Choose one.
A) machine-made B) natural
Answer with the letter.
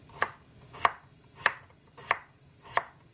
B